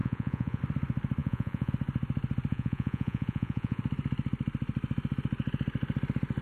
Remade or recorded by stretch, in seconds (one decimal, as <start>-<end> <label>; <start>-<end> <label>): 0.0-0.6 remade; 0.6-1.2 recorded; 1.2-1.7 remade; 1.7-2.5 recorded; 2.5-3.8 remade; 3.8-6.4 recorded